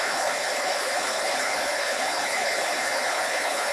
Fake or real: fake